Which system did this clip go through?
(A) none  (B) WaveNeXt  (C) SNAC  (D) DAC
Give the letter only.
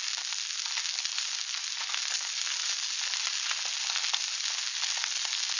A